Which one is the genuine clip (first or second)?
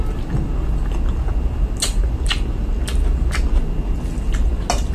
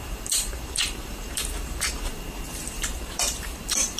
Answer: first